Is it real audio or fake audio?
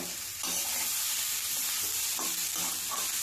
real